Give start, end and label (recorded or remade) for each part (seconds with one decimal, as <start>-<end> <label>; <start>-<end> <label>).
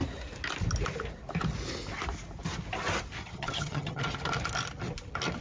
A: 0.0-3.2 recorded; 3.2-4.0 remade; 4.0-5.4 recorded